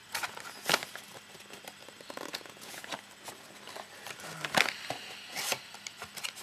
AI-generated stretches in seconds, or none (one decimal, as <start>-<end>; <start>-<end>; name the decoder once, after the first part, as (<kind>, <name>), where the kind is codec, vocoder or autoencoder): 2.3-2.9 (vocoder, Vocos)